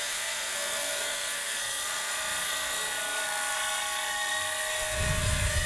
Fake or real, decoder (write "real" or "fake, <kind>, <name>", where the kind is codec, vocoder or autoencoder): fake, codec, SNAC